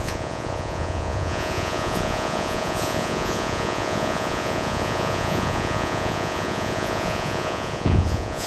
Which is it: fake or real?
fake